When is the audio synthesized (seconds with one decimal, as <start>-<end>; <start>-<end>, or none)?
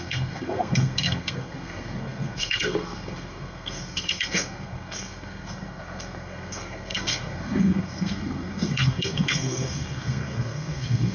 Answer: 0.0-11.1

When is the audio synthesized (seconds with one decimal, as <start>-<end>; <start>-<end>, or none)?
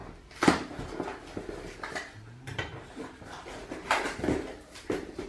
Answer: none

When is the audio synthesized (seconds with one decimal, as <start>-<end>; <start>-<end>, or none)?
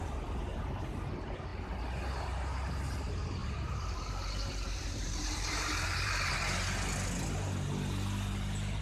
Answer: 0.5-1.1; 3.4-6.3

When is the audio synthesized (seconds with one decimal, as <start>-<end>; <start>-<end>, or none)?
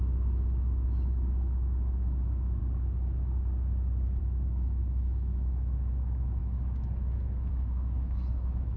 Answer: 0.0-2.6; 4.2-8.8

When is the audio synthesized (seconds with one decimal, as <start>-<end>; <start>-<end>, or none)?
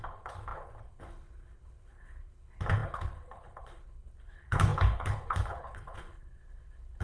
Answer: 0.0-7.0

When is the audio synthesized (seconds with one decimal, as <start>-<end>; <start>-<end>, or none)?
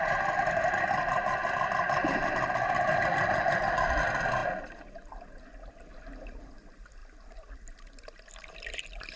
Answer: none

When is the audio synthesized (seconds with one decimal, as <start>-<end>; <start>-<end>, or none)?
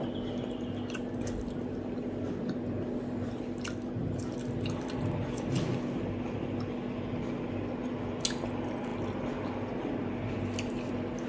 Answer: none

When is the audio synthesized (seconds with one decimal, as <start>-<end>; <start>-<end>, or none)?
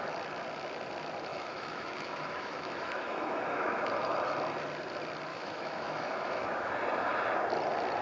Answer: 1.3-3.8; 5.3-6.7